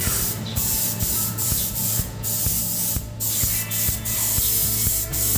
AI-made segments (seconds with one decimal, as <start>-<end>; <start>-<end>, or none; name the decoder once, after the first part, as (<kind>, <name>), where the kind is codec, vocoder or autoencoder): 0.5-2.4 (vocoder, Vocos)